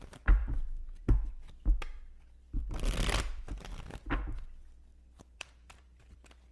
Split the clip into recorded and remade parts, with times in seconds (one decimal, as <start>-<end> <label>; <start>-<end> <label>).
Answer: 0.0-0.4 recorded; 0.4-1.3 remade; 1.3-4.9 recorded; 4.9-6.1 remade; 6.1-6.5 recorded